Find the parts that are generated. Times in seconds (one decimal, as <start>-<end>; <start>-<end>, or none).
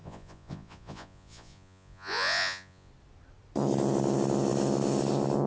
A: 0.0-2.9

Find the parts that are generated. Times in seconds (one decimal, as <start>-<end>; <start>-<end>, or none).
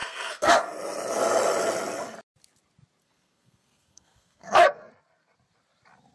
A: 0.0-0.6; 3.0-4.9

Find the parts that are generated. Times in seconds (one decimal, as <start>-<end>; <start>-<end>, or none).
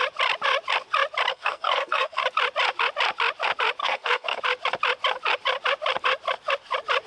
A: 1.3-2.2; 3.8-4.4